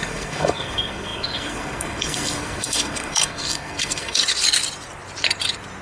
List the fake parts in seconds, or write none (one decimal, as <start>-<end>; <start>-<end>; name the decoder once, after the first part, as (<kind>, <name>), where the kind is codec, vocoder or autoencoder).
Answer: 0.0-4.2 (codec, SNAC)